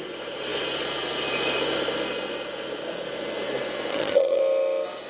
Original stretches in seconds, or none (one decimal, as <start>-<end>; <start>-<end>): 0.0-3.9; 4.4-5.1

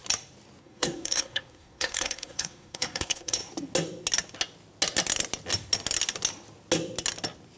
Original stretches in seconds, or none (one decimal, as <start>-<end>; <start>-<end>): 0.0-0.6; 3.4-7.6

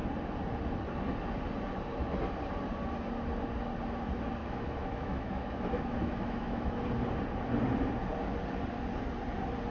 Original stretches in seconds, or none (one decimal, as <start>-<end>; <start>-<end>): 0.0-4.4; 6.8-9.7

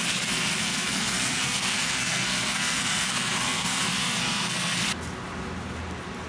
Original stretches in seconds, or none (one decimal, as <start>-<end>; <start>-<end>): 4.8-6.3

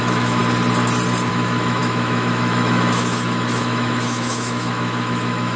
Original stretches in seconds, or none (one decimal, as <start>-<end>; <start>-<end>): 0.4-1.3